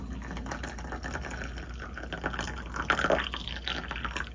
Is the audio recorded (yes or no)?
yes